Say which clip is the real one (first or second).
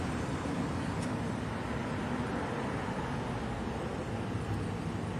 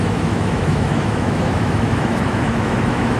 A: first